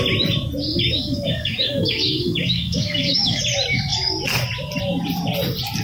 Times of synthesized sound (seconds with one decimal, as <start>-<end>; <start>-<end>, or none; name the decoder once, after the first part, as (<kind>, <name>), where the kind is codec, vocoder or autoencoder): 0.7-3.4 (codec, DAC)